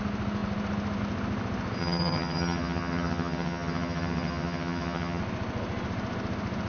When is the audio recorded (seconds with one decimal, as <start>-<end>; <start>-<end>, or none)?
0.0-1.8; 5.2-6.7